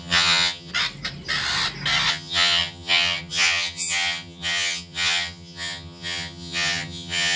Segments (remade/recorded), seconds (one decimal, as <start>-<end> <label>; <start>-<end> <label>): 0.0-0.7 remade; 0.7-2.1 recorded; 2.1-7.4 remade